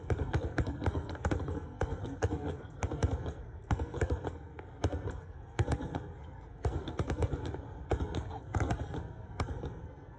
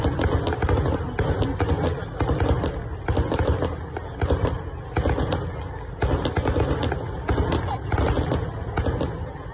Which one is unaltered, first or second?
second